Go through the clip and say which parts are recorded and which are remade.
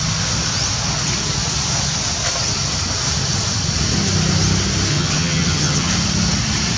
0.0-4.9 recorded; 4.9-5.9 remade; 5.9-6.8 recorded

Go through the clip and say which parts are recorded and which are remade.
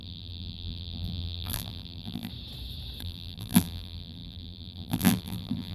0.0-2.3 remade; 2.3-3.0 recorded; 3.0-5.7 remade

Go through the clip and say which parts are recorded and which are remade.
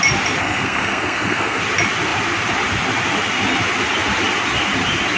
0.0-0.4 recorded; 0.4-1.6 remade; 1.6-5.2 recorded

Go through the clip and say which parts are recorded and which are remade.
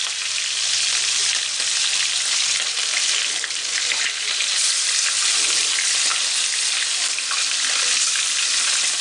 0.0-9.0 recorded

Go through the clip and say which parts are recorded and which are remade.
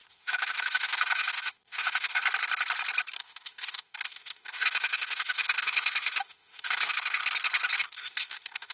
0.0-2.2 remade; 2.2-3.2 recorded; 3.2-7.2 remade; 7.2-7.8 recorded; 7.8-8.7 remade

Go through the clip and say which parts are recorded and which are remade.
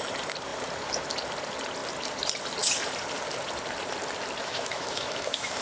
0.0-4.4 recorded; 4.4-5.6 remade